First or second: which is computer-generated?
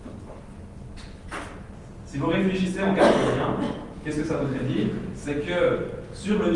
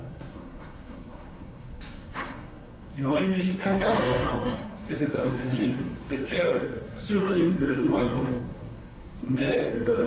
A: second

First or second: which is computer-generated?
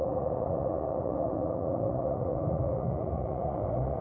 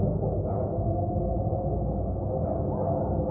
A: first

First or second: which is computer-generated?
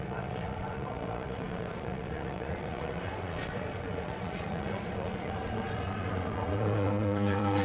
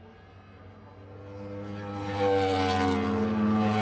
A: first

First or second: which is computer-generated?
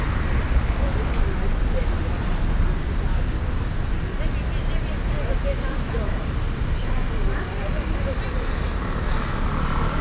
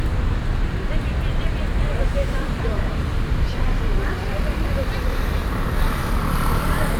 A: second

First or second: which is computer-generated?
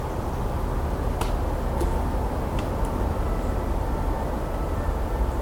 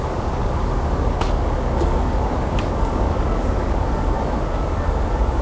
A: second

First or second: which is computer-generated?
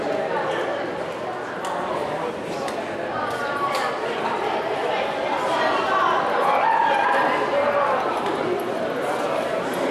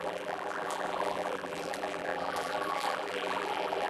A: second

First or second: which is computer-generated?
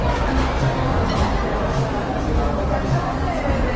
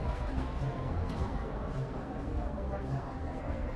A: second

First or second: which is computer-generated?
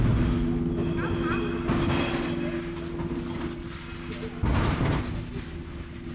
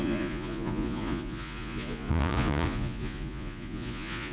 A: second